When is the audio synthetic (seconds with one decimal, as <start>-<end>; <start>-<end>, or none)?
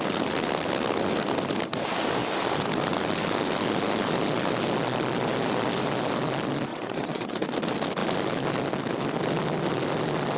6.7-7.5